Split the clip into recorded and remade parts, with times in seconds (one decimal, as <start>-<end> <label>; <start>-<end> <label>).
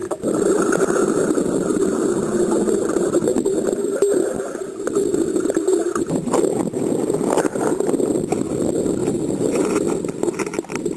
0.0-2.0 remade; 2.0-9.0 recorded; 9.0-9.7 remade; 9.7-11.0 recorded